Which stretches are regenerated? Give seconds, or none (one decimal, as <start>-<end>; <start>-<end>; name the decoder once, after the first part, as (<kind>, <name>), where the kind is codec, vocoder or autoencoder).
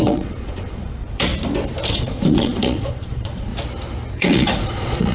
0.0-1.3 (vocoder, Vocos); 1.9-3.5; 4.1-5.1